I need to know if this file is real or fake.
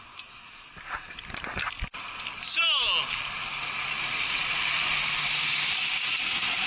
real